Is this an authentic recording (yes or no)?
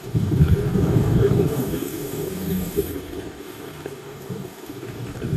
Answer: no